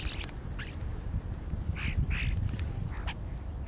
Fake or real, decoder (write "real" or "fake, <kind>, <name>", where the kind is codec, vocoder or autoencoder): real